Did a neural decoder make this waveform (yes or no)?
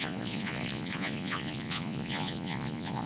yes